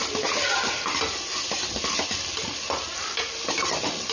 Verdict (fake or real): fake